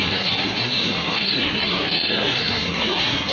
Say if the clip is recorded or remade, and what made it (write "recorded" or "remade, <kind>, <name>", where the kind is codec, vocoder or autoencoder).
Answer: remade, codec, SNAC